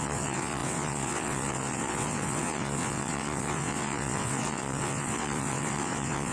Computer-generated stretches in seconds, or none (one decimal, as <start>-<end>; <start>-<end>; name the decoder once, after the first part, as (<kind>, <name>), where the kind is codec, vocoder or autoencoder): 0.0-6.3 (vocoder, WaveNeXt)